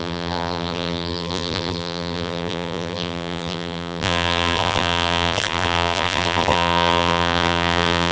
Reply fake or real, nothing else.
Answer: fake